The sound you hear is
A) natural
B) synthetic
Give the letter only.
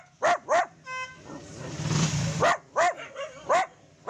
A